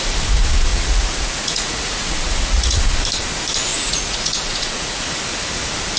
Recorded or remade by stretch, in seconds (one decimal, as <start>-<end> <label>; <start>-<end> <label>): 0.0-0.7 recorded; 0.7-2.8 remade; 2.8-3.7 recorded; 3.7-5.0 remade; 5.0-6.0 recorded